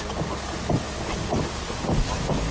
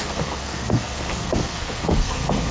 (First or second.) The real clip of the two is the first